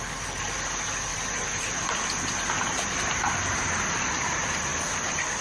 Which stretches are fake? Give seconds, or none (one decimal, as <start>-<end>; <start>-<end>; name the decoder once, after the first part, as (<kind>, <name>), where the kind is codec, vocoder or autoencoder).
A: none